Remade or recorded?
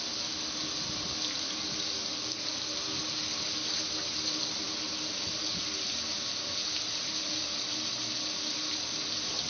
recorded